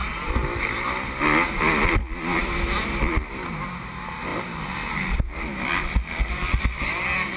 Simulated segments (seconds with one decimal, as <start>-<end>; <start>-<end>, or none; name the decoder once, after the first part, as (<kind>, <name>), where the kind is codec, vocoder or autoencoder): none